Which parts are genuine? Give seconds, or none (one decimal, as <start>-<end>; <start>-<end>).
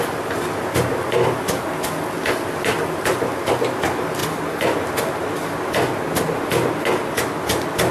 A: 0.0-7.9